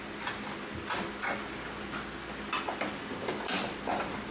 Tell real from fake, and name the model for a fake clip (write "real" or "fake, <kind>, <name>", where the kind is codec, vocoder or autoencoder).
real